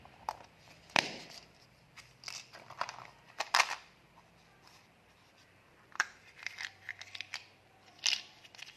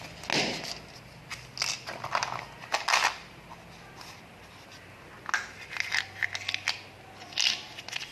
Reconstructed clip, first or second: first